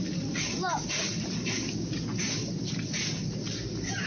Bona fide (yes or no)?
yes